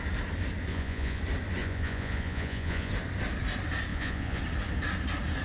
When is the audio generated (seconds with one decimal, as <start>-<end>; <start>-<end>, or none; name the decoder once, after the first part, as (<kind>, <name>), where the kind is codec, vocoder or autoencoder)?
0.7-1.2 (vocoder, Vocos); 1.6-2.9; 3.9-4.4